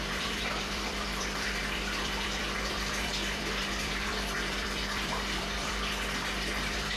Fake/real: fake